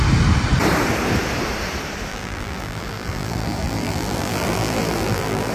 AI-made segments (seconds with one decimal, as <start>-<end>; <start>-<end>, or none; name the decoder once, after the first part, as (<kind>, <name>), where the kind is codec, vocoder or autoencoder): 2.1-5.5 (vocoder, BigVGAN v2)

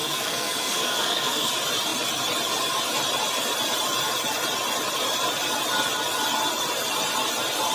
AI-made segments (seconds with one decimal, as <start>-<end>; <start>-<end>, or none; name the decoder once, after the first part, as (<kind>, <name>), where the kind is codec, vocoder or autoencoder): 0.0-1.5 (codec, SNAC)

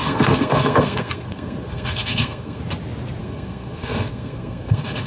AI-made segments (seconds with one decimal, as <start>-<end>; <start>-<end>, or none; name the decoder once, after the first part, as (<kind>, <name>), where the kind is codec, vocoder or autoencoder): 0.0-2.6 (codec, SNAC); 3.2-5.1

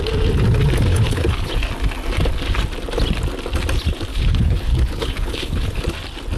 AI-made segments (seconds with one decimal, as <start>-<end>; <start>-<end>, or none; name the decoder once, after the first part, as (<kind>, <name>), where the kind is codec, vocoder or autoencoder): 0.9-1.5 (codec, HILCodec); 4.1-5.8

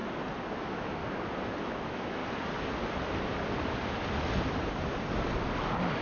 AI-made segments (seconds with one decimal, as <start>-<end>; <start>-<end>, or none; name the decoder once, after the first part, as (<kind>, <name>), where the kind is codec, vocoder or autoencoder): 0.6-1.0 (autoencoder, DAC-VAE); 1.6-2.2

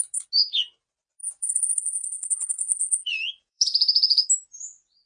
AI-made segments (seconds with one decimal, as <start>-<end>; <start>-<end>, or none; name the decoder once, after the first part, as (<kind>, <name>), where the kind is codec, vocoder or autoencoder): 1.2-4.3 (vocoder, Vocos)

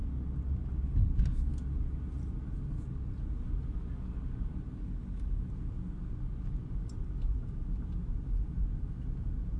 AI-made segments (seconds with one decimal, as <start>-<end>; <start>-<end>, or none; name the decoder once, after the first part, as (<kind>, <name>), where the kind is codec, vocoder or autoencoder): none

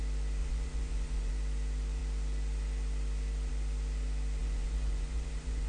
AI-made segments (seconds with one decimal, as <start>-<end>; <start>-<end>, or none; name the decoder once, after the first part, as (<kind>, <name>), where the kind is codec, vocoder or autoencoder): 0.4-1.3 (vocoder, Vocos); 4.4-5.7